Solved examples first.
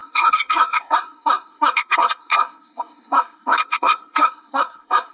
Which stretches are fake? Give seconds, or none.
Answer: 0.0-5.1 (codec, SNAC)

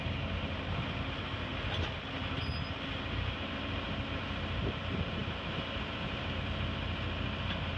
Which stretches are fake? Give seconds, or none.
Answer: none

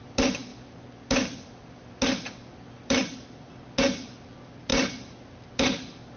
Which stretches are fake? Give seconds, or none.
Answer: none